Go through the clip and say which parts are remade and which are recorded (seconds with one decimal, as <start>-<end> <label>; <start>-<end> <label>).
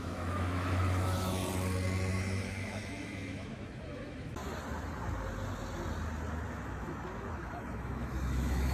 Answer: 0.0-1.4 remade; 1.4-2.1 recorded; 2.1-4.4 remade; 4.4-6.5 recorded; 6.5-8.7 remade